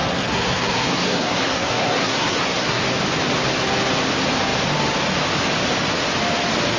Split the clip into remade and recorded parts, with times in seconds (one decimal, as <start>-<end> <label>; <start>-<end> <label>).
0.0-2.8 remade; 2.8-6.8 recorded